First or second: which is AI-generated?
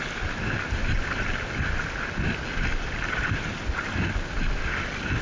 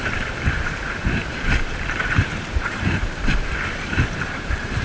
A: second